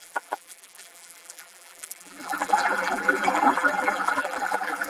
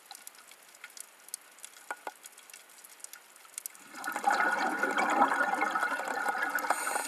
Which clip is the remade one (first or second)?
first